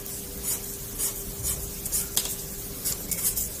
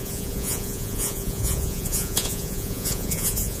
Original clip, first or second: first